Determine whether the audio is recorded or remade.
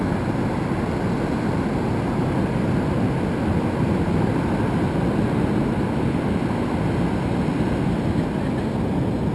recorded